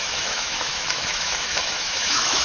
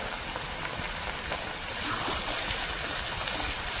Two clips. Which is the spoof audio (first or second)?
first